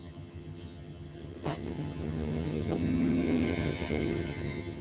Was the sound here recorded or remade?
remade